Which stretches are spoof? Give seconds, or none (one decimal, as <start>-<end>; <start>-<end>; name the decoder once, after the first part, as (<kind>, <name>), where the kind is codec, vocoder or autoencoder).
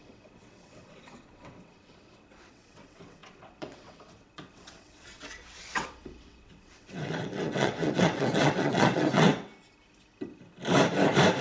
0.0-9.5 (vocoder, WaveNeXt)